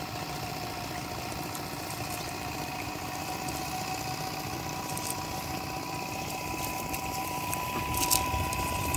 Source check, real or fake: fake